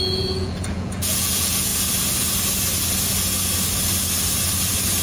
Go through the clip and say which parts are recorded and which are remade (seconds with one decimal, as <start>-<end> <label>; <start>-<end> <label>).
0.0-1.7 remade; 1.7-5.0 recorded